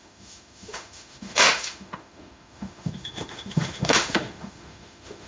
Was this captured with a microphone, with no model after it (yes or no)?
no